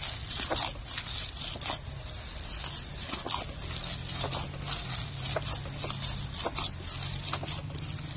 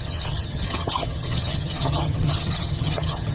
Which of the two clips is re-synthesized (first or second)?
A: second